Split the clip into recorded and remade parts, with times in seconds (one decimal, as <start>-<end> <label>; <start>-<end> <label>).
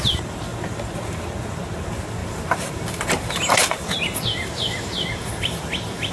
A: 0.0-2.2 recorded; 2.2-6.1 remade